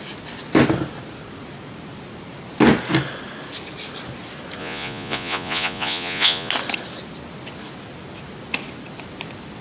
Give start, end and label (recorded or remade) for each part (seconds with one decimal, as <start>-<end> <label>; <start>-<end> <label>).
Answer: 0.0-4.6 recorded; 4.6-6.5 remade; 6.5-9.6 recorded